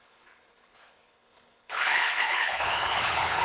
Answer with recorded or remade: remade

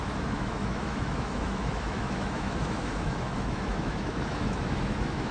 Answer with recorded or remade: remade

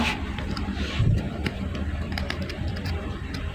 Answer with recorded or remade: remade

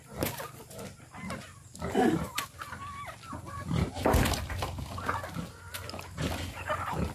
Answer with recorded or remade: recorded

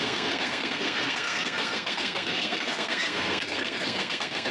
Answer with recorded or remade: remade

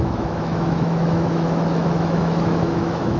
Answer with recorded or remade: remade